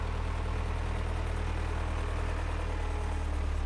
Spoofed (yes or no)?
no